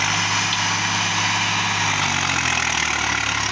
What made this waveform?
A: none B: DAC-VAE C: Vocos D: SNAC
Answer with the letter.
A